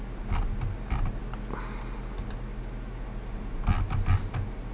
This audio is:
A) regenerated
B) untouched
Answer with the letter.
B